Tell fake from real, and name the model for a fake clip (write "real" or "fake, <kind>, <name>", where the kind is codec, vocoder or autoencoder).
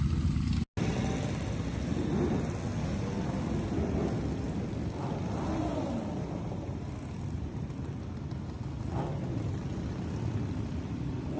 real